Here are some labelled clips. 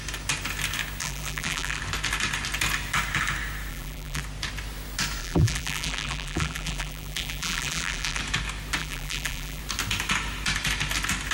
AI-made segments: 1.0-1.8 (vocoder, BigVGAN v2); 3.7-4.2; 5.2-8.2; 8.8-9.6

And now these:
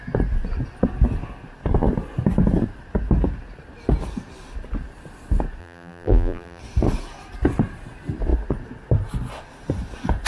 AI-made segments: 5.6-6.6 (vocoder, BigVGAN v2)

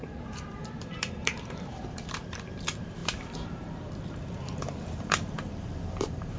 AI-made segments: 0.0-6.4 (vocoder, BigVGAN v2)